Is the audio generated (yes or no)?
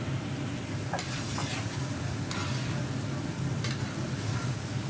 no